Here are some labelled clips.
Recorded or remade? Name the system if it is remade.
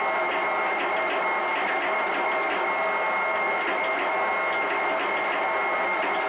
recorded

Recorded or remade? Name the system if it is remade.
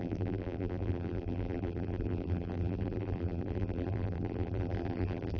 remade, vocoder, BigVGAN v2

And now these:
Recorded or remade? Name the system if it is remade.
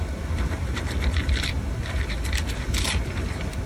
remade, vocoder, BigVGAN v2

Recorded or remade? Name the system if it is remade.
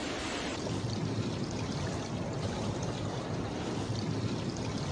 remade, vocoder, BigVGAN v2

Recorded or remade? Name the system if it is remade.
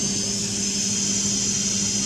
recorded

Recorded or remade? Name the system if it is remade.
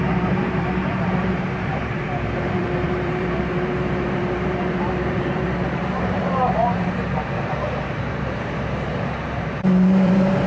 remade, vocoder, BigVGAN v2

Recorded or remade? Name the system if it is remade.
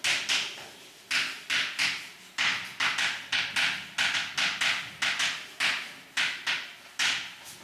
recorded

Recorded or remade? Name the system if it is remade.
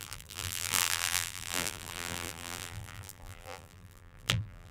remade, vocoder, BigVGAN v2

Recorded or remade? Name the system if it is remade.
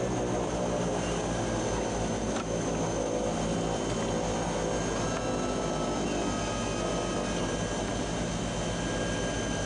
recorded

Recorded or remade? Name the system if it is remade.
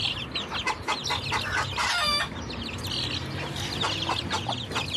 recorded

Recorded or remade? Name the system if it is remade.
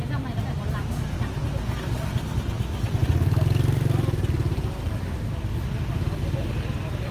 recorded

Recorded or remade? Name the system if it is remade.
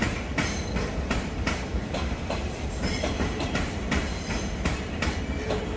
remade, vocoder, BigVGAN v2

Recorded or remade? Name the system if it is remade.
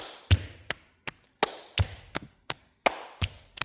recorded